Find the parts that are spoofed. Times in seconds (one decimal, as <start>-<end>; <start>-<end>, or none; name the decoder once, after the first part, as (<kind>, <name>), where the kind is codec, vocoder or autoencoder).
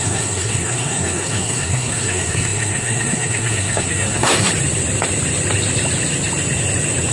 0.0-4.5 (codec, SNAC)